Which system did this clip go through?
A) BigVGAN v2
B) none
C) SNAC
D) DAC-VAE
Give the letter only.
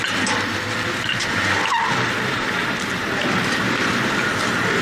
B